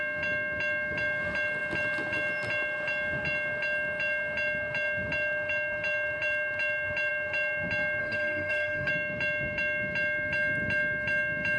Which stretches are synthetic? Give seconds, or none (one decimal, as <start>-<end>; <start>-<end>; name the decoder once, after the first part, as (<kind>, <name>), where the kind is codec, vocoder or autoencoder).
8.0-8.9 (codec, SNAC)